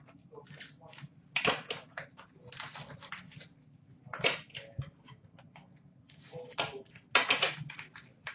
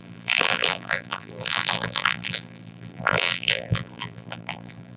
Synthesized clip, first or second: second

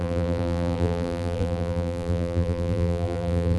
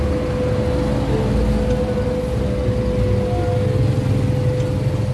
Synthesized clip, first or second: first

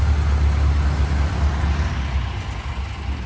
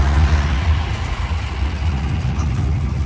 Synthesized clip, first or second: second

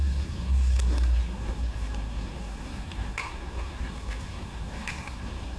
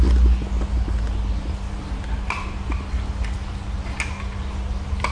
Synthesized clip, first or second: first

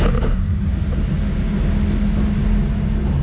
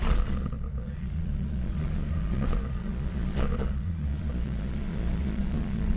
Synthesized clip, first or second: second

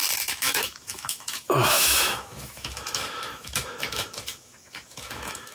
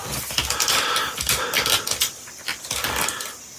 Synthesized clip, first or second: first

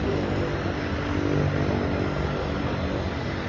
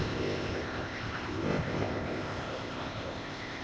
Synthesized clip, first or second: second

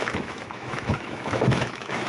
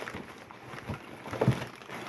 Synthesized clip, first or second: first